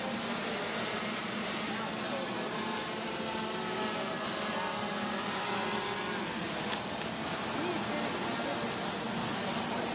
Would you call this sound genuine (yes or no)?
yes